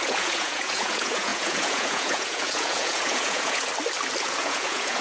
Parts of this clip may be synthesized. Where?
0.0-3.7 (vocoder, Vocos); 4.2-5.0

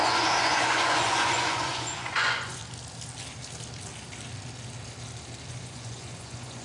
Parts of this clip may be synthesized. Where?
0.0-2.6 (vocoder, Vocos); 5.5-6.6

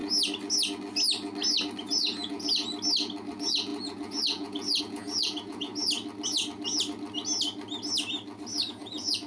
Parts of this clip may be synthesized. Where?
1.8-2.5 (vocoder, Vocos); 3.3-5.7; 8.7-9.3